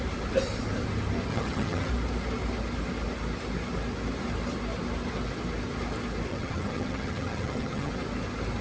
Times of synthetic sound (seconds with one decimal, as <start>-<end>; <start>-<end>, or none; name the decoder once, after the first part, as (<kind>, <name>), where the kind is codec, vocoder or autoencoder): 1.3-1.9 (vocoder, HiFi-GAN); 6.3-7.9